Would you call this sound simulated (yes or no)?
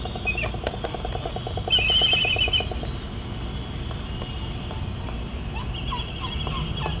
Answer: no